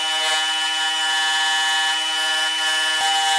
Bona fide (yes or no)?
yes